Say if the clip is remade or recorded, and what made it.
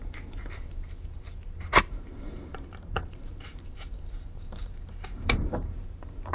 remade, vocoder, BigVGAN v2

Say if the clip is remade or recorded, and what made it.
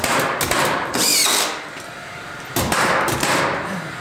recorded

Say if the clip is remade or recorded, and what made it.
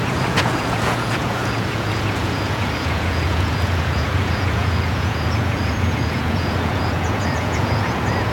remade, vocoder, Vocos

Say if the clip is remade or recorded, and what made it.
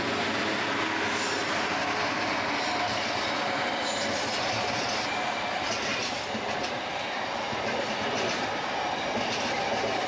recorded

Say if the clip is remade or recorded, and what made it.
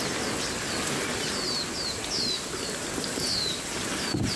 recorded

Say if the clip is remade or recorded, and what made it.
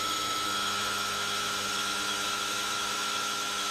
remade, autoencoder, DAC-VAE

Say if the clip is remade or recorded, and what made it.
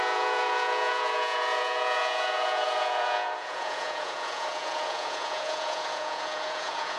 remade, vocoder, Vocos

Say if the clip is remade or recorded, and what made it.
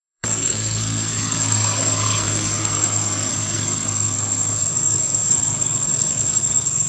remade, codec, SNAC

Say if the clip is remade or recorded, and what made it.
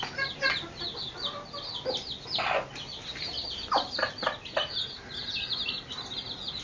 recorded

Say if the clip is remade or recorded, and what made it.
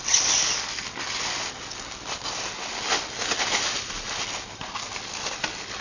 recorded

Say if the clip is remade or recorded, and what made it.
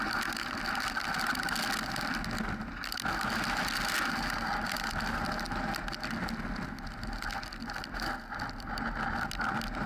recorded